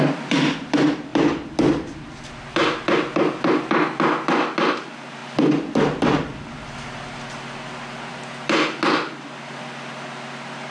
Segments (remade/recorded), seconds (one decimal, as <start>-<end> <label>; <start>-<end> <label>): 0.0-10.7 recorded